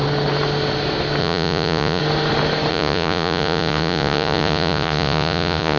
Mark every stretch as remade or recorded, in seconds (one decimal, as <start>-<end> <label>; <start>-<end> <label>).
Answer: 0.0-1.2 recorded; 1.2-2.0 remade; 2.0-2.7 recorded; 2.7-5.8 remade